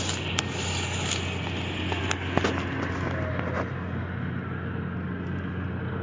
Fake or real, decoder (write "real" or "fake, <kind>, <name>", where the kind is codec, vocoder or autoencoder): real